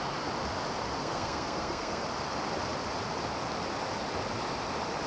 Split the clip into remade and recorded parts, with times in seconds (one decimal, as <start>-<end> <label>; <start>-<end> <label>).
0.0-1.0 recorded; 1.0-2.0 remade; 2.0-5.1 recorded